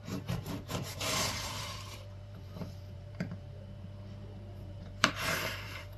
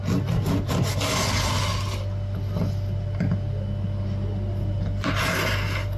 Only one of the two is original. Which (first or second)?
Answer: second